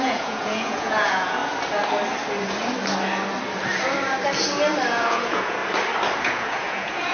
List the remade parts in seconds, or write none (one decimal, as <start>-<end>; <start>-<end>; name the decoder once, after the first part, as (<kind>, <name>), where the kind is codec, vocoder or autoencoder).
0.0-1.4 (vocoder, Vocos); 4.9-5.6; 6.2-7.1